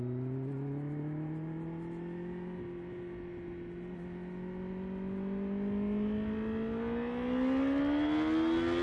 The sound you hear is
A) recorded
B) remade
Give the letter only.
A